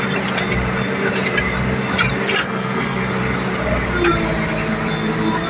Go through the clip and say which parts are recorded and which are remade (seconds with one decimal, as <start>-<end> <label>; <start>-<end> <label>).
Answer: 0.0-2.4 recorded; 2.4-3.1 remade; 3.1-5.5 recorded